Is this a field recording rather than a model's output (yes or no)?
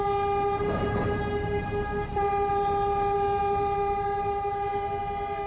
yes